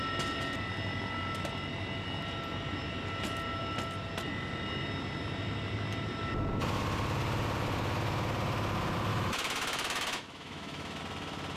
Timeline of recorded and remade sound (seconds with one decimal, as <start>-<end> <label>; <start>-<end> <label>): 0.0-9.1 recorded; 9.1-11.0 remade; 11.0-11.6 recorded